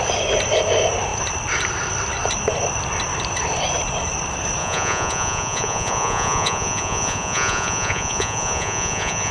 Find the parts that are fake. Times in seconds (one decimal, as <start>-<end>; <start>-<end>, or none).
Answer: 4.6-9.3